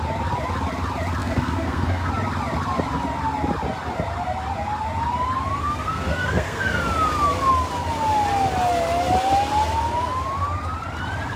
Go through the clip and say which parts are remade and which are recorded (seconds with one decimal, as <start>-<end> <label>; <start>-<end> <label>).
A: 0.0-1.2 recorded; 1.2-2.1 remade; 2.1-5.6 recorded; 5.6-6.8 remade; 6.8-11.4 recorded